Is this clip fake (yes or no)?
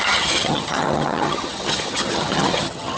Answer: yes